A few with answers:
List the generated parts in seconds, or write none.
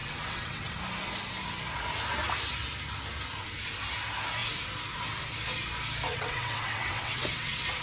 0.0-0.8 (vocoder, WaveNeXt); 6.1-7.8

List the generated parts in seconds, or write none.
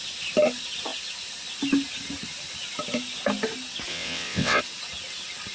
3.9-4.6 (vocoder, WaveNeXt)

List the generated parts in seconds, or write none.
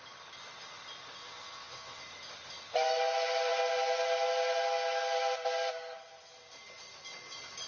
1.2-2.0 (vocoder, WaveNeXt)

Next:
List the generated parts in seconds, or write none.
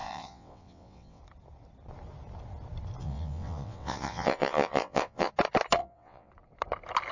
0.0-1.2 (vocoder, WaveNeXt); 3.0-5.3; 5.8-6.3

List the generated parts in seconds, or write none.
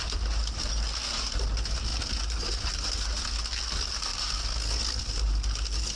none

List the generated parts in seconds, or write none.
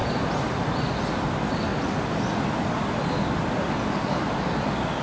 none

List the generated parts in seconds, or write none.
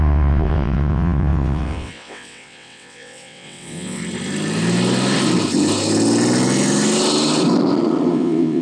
0.0-4.0 (vocoder, WaveNeXt); 8.1-8.6